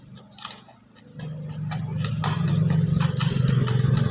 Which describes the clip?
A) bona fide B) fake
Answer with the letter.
A